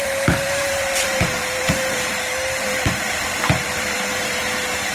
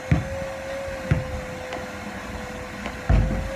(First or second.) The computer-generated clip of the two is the first